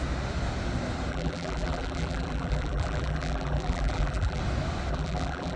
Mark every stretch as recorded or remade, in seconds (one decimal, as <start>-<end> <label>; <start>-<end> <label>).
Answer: 0.0-1.1 recorded; 1.1-4.4 remade; 4.4-4.9 recorded; 4.9-5.6 remade